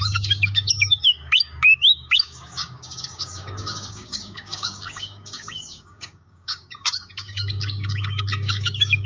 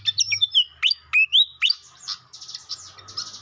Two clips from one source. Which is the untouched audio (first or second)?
second